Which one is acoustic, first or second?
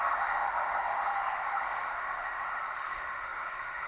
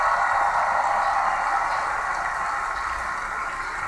second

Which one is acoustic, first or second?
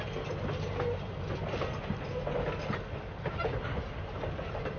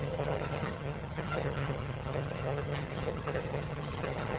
first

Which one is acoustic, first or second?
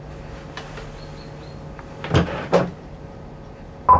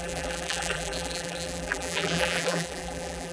first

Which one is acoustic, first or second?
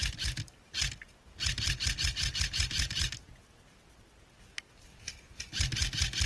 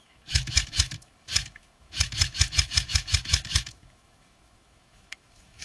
first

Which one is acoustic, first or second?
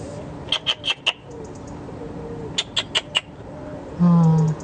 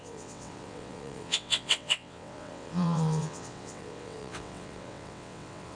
first